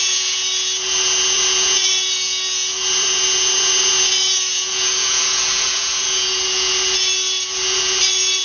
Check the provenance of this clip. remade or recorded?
remade